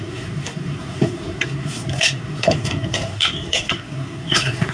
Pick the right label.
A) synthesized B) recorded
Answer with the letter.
A